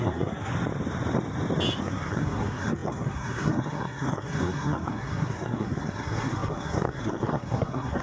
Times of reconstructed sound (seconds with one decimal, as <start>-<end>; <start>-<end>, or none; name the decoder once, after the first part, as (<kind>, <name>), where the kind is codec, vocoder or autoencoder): 0.0-0.5 (codec, SNAC); 1.8-8.0